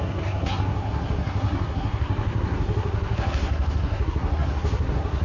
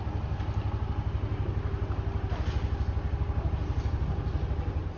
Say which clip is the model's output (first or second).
first